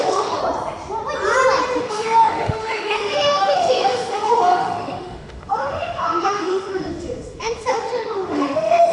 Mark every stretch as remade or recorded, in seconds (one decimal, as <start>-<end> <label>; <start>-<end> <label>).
0.0-0.4 remade; 0.4-1.8 recorded; 1.8-8.9 remade